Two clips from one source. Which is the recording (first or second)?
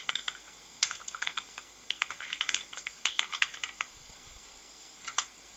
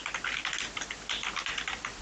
second